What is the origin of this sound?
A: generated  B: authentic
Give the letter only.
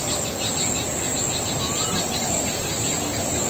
B